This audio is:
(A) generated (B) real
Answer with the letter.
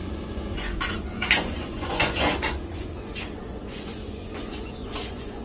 A